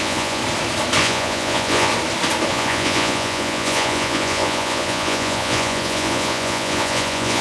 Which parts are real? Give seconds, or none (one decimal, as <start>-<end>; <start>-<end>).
0.4-1.0; 1.9-2.5